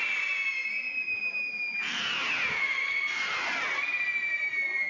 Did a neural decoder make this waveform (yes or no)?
no